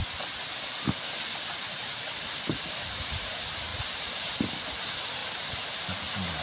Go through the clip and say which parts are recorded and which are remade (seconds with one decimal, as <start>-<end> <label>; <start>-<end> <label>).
0.0-6.4 recorded